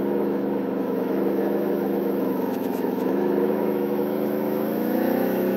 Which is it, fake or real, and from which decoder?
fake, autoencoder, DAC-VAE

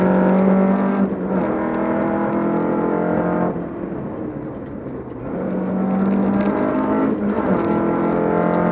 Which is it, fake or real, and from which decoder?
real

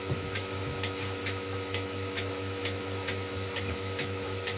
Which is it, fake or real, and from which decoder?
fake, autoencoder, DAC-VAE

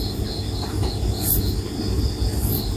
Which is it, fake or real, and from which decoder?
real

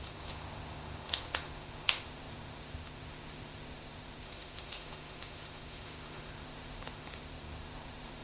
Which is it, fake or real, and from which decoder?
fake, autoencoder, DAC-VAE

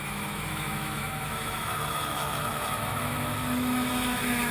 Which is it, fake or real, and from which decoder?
fake, autoencoder, DAC-VAE